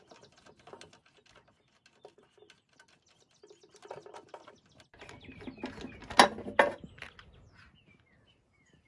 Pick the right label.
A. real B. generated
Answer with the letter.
A